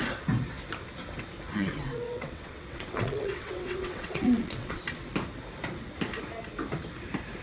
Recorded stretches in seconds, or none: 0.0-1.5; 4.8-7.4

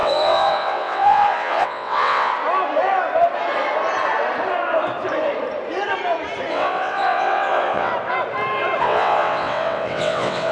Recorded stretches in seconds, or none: 2.3-6.5; 7.9-8.8

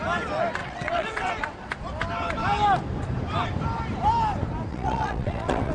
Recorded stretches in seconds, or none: 0.0-0.6; 1.3-4.7

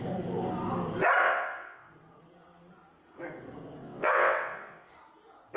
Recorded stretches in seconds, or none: 0.0-1.2; 1.9-3.8; 4.9-5.6